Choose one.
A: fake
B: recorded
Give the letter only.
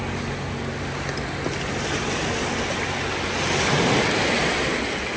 B